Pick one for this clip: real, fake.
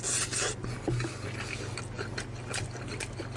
real